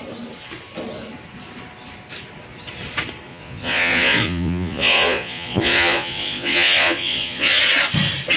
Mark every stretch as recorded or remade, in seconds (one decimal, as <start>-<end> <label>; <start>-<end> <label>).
0.0-3.3 recorded; 3.3-7.6 remade; 7.6-8.4 recorded